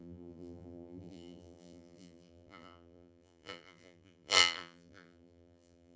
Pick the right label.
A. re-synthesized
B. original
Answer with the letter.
A